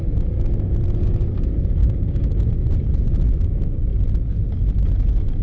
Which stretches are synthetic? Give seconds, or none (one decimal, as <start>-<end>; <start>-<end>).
1.8-2.5

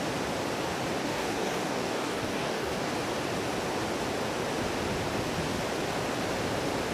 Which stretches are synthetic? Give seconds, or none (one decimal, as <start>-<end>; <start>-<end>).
1.0-2.9